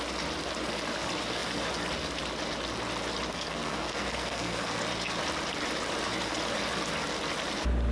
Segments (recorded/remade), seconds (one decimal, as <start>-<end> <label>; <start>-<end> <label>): 0.0-3.3 recorded; 3.3-4.8 remade; 4.8-7.9 recorded